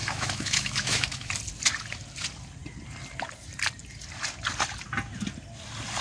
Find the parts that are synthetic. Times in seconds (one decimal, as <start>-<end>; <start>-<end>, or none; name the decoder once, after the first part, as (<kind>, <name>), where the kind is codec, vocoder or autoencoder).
0.0-1.3 (autoencoder, DAC-VAE)